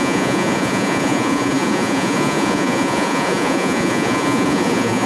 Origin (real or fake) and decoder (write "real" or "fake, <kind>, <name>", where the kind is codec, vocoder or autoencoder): fake, vocoder, Vocos